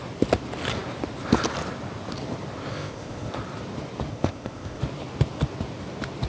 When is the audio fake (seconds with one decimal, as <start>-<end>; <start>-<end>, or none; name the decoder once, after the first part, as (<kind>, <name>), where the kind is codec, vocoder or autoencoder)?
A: 2.7-3.3 (codec, ZipCodec); 4.1-4.8